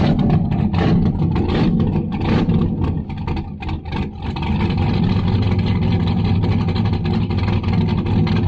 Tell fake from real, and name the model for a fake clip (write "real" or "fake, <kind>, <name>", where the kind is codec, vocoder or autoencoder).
real